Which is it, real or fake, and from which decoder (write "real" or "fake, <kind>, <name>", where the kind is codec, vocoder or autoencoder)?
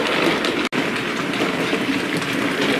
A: real